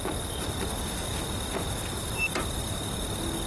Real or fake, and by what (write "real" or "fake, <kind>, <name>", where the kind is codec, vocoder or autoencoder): real